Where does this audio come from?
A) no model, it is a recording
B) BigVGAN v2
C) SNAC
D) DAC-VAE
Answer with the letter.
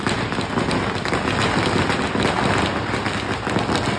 A